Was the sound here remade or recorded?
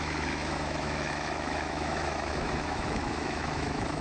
remade